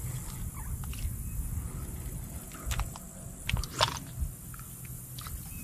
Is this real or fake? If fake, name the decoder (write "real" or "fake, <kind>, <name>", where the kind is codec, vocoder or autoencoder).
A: real